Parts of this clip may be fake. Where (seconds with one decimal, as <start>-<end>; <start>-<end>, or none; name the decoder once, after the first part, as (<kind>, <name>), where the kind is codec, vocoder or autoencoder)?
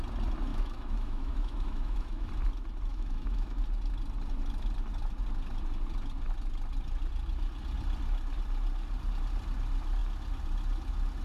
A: 0.5-2.3 (autoencoder, DAC-VAE); 2.9-3.6